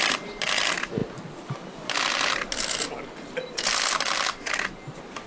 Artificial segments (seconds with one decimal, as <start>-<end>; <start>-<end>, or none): none

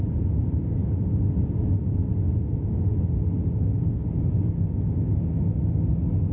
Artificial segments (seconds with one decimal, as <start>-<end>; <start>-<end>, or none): none

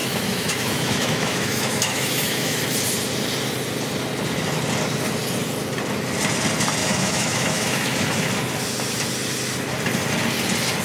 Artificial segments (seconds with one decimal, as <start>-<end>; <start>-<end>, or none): 0.0-2.6; 6.8-8.3